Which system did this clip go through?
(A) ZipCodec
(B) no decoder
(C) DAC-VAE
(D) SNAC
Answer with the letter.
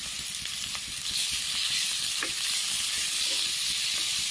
B